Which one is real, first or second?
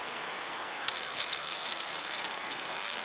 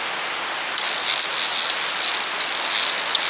second